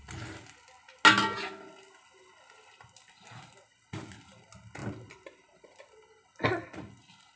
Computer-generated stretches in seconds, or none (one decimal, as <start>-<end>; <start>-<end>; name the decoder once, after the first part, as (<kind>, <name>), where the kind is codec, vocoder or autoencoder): none